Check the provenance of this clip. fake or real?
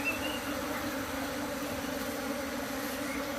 real